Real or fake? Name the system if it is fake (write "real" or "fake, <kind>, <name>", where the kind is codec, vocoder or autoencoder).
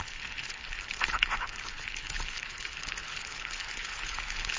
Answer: fake, codec, HILCodec